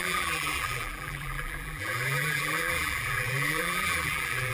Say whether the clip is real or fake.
fake